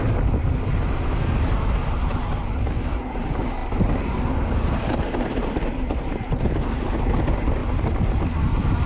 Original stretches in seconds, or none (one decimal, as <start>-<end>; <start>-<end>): 0.0-8.9